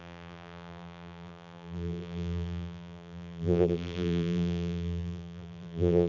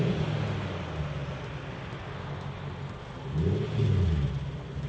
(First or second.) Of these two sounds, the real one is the second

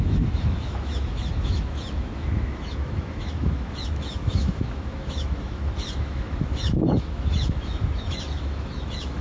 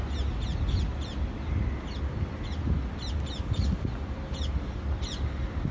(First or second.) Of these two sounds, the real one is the second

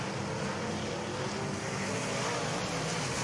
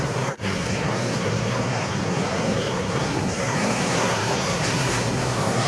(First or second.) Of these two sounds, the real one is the first